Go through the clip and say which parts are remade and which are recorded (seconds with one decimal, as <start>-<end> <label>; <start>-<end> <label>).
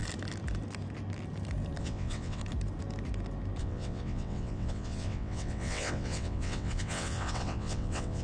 0.0-1.8 recorded; 1.8-2.4 remade; 2.4-3.6 recorded; 3.6-8.2 remade